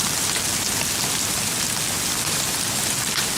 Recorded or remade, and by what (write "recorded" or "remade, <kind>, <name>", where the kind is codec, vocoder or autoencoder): recorded